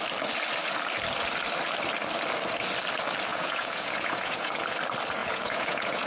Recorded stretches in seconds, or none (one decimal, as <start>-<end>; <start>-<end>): 0.0-3.3; 4.5-5.2